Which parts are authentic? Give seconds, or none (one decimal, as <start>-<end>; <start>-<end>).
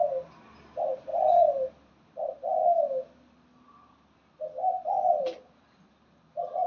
0.0-1.1; 2.2-6.7